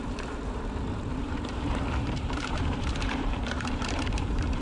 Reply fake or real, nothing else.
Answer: fake